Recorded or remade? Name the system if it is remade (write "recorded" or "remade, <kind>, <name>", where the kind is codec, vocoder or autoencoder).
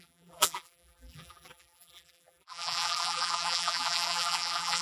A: remade, vocoder, BigVGAN v2